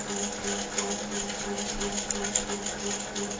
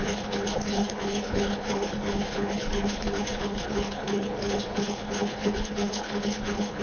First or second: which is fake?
second